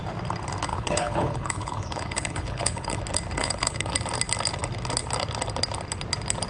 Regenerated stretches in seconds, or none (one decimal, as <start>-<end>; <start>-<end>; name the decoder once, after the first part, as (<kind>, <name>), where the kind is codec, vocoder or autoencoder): 0.7-3.0 (codec, HILCodec); 3.4-3.9